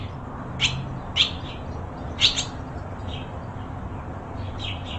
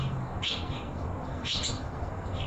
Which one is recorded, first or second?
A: first